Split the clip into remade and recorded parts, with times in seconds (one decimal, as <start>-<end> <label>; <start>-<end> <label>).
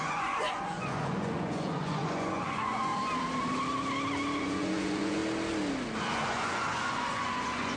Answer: 0.0-2.9 remade; 2.9-4.4 recorded; 4.4-5.2 remade; 5.2-6.0 recorded; 6.0-7.8 remade